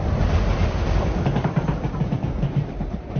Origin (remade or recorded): recorded